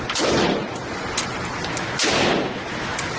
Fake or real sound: real